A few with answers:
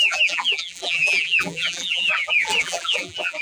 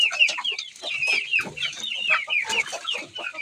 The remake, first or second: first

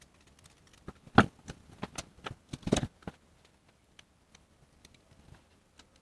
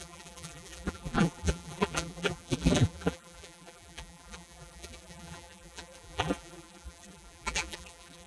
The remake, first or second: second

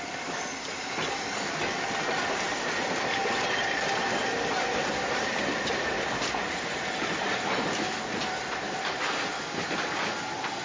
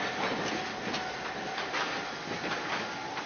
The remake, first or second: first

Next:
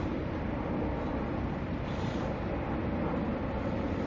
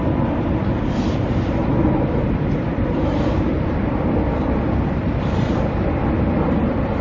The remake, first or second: second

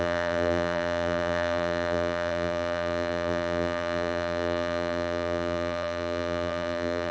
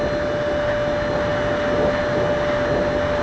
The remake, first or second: first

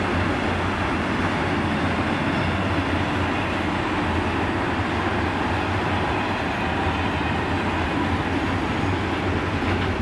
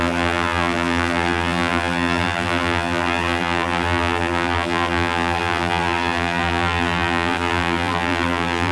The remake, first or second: second